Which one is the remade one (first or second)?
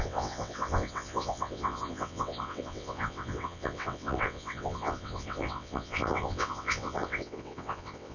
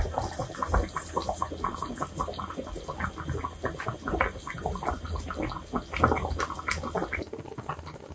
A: first